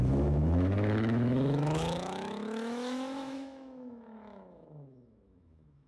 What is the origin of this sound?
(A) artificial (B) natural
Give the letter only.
A